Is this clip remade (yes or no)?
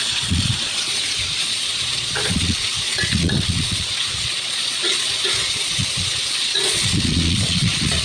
yes